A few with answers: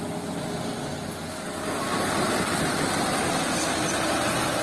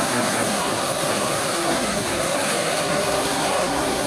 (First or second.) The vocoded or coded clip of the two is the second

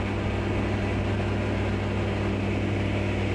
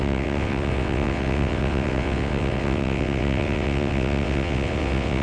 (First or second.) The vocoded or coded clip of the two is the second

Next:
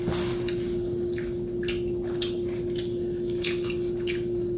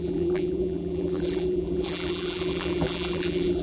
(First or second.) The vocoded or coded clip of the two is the second